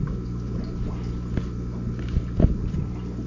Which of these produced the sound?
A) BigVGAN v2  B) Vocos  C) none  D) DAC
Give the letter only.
C